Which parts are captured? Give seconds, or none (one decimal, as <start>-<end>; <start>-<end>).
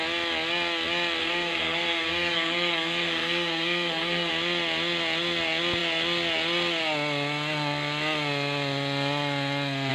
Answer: 0.0-1.2; 4.3-9.9